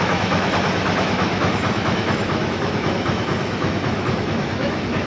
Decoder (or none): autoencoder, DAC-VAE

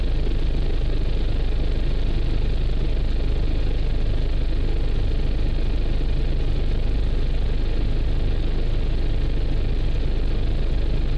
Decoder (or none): none